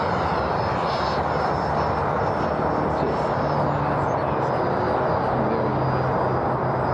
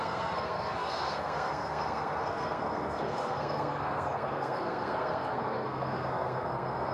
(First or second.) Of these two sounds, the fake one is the second